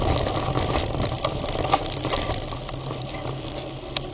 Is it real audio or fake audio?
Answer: real